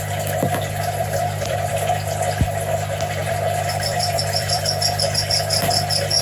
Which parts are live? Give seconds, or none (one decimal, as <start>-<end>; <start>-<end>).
0.0-1.0; 1.7-3.2; 4.6-6.2